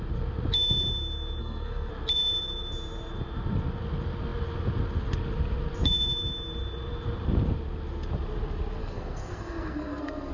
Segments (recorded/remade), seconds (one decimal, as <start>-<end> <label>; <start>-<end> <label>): 0.0-1.4 recorded; 1.4-1.9 remade; 1.9-8.8 recorded; 8.8-10.3 remade